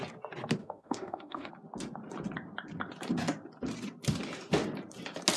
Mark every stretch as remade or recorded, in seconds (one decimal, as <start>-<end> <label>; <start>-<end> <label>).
0.0-0.6 recorded; 0.6-1.5 remade; 1.5-5.4 recorded